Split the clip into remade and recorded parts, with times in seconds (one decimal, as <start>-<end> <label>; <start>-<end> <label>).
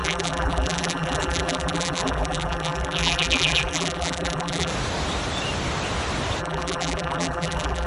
0.0-4.7 remade; 4.7-6.4 recorded; 6.4-7.9 remade